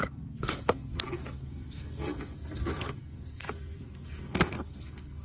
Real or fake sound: fake